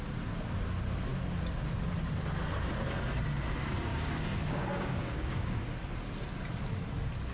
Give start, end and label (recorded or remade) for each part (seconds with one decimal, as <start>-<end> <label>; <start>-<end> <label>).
0.0-3.9 recorded; 3.9-5.6 remade; 5.6-7.3 recorded